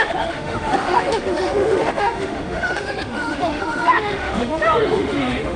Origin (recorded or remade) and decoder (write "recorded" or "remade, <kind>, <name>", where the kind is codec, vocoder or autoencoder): remade, autoencoder, DAC-VAE